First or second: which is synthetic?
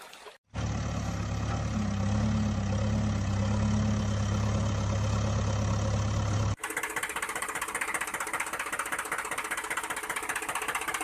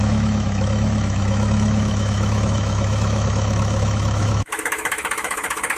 second